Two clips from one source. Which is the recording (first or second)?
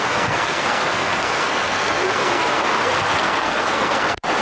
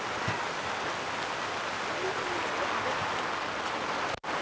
second